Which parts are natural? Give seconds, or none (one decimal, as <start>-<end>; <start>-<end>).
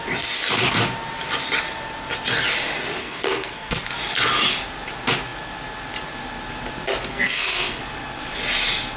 0.0-3.0; 3.9-7.0; 7.8-9.0